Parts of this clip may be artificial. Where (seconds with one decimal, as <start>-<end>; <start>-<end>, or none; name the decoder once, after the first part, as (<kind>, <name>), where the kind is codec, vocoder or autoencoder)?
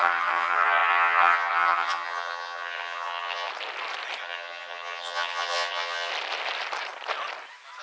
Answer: 0.0-3.5 (vocoder, HiFi-GAN); 4.2-6.1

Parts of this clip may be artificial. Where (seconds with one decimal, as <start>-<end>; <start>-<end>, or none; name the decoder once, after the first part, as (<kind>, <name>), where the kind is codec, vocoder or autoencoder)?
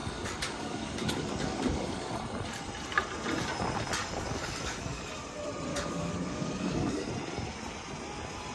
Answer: 0.0-2.1 (codec, DAC); 4.0-5.1; 5.7-7.1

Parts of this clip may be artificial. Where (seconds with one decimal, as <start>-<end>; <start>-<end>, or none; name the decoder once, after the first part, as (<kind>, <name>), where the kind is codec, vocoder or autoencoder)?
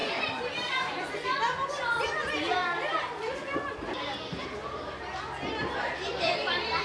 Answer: 0.0-1.8 (vocoder, BigVGAN v2); 5.6-6.8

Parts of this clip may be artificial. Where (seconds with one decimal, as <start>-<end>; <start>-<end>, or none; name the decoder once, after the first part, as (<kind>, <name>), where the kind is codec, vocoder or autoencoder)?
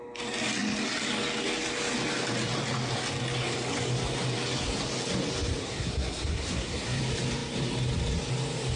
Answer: 5.6-7.0 (codec, SNAC)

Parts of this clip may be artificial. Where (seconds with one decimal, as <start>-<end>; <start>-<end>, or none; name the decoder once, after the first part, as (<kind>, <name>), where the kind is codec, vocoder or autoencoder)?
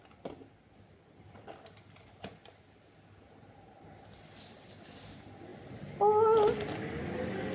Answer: none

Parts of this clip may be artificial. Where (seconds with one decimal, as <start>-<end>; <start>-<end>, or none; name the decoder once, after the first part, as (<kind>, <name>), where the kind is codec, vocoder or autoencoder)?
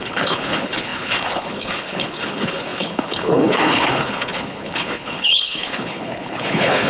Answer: 0.0-6.9 (codec, HILCodec)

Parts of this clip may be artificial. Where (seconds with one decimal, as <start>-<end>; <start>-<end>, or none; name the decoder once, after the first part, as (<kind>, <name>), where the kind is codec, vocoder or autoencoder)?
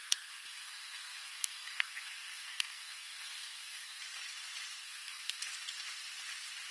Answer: 0.0-4.0 (codec, SNAC); 4.8-5.4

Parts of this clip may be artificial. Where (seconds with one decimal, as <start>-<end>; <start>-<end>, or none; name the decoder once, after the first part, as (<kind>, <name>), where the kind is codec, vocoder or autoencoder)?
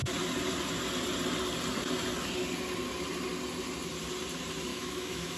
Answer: 4.7-5.4 (autoencoder, DAC-VAE)